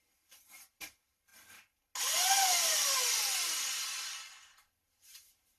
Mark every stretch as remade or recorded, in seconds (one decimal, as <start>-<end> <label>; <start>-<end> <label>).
0.0-1.3 remade; 1.3-4.7 recorded; 4.7-5.6 remade